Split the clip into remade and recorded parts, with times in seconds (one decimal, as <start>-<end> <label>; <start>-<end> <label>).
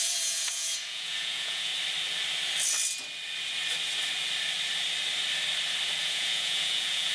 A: 0.0-1.7 remade; 1.7-6.0 recorded; 6.0-7.1 remade